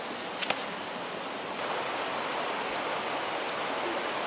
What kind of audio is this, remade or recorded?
recorded